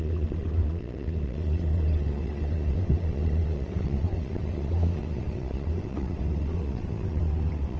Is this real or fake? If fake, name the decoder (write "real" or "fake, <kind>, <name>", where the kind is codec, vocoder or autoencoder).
fake, vocoder, WaveNeXt